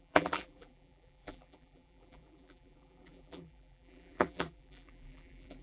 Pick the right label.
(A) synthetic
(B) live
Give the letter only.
A